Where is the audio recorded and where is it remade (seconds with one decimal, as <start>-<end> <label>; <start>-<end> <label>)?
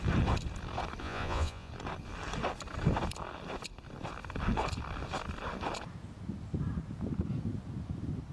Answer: 0.0-1.0 recorded; 1.0-1.7 remade; 1.7-8.3 recorded